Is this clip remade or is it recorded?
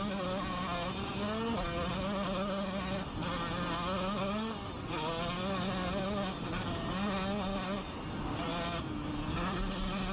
recorded